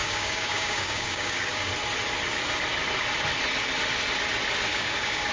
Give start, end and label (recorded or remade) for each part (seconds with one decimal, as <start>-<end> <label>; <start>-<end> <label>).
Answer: 0.0-1.7 remade; 1.7-4.7 recorded; 4.7-5.3 remade